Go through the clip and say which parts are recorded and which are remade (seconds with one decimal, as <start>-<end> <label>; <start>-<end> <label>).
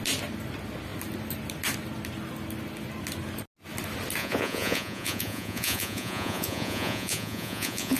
0.0-4.2 recorded; 4.2-8.0 remade